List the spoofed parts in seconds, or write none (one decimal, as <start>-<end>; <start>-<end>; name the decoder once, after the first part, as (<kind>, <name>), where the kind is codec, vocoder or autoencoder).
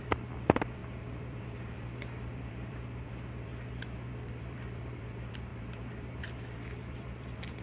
0.0-3.5 (vocoder, BigVGAN v2); 4.1-7.6